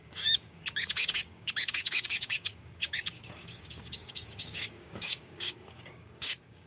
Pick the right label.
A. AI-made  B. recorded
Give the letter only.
A